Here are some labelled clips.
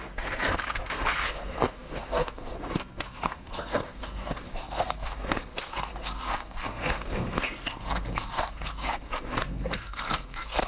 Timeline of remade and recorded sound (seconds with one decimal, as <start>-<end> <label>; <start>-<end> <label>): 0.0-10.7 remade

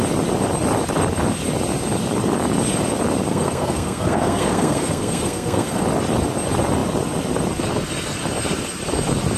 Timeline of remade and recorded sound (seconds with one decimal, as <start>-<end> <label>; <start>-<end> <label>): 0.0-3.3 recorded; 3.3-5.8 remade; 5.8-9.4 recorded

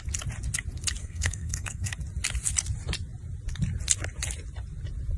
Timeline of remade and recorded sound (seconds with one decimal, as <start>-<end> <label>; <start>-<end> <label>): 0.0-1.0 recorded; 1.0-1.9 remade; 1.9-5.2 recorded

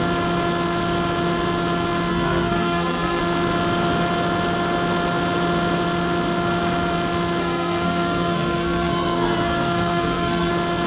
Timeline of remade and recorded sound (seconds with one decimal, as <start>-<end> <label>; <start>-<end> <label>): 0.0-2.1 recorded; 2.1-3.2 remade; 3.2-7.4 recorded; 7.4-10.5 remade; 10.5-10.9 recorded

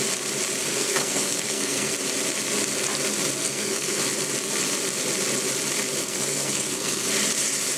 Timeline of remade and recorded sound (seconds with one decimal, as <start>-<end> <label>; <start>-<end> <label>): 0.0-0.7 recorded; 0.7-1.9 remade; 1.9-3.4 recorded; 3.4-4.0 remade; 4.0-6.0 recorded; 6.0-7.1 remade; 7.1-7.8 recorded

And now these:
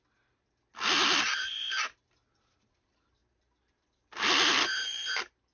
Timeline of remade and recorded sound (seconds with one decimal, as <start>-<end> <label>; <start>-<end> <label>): 0.0-5.5 recorded